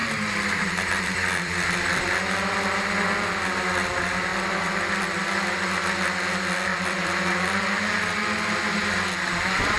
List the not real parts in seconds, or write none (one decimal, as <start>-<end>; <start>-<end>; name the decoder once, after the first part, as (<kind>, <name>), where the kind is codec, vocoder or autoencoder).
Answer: 0.0-2.0 (vocoder, BigVGAN v2); 4.3-4.9; 6.7-7.7